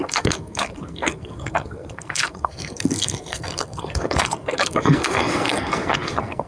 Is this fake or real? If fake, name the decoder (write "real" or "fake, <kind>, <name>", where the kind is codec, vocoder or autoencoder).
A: fake, codec, SNAC